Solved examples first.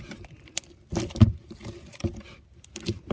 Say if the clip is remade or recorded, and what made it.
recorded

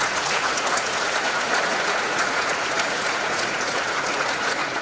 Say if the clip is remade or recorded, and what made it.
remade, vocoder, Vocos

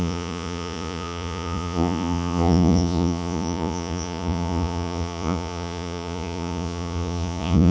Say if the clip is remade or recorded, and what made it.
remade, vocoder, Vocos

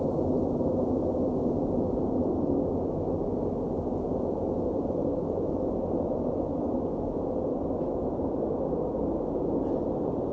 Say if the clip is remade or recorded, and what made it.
recorded